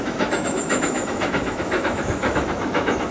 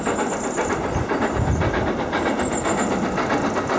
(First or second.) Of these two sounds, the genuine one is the second